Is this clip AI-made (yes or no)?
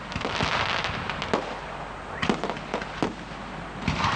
no